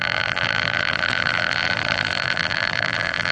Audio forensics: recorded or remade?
remade